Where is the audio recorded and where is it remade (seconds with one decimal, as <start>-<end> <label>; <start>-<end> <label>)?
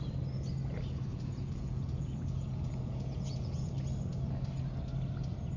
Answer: 0.0-1.1 recorded; 1.1-3.7 remade; 3.7-5.6 recorded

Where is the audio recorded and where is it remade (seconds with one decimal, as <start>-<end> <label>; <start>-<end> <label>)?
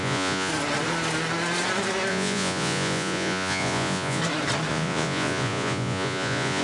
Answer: 0.0-0.5 remade; 0.5-2.1 recorded; 2.1-4.2 remade; 4.2-4.7 recorded; 4.7-6.6 remade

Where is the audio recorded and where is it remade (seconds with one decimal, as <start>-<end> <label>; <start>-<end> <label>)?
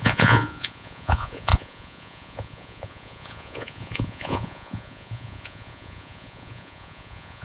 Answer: 0.0-7.4 remade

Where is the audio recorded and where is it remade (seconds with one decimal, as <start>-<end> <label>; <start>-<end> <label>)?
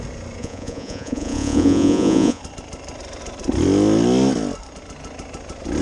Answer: 0.0-0.4 recorded; 0.4-2.4 remade; 2.4-5.8 recorded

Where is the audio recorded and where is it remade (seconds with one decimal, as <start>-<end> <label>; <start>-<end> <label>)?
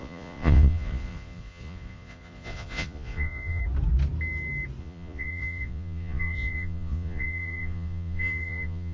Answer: 0.0-3.6 remade; 3.6-4.8 recorded; 4.8-8.9 remade